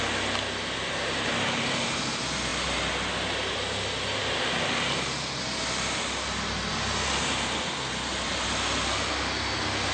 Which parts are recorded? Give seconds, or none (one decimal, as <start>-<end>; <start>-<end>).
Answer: 0.0-9.9